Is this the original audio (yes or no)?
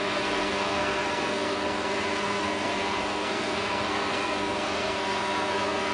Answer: no